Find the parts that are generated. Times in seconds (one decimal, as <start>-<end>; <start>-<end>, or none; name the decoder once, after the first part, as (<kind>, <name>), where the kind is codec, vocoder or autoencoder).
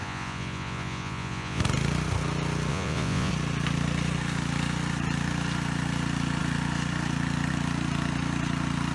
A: 0.0-1.6 (vocoder, Vocos); 2.7-3.3